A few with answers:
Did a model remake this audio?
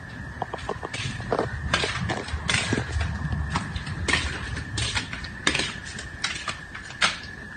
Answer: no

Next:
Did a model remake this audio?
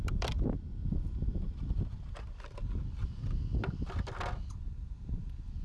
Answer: no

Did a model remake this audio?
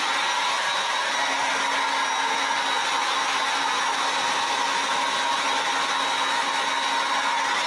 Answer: no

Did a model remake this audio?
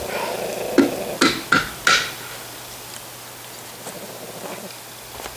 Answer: no